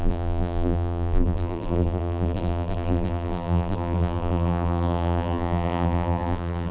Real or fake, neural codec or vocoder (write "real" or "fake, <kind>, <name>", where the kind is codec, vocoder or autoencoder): fake, vocoder, BigVGAN v2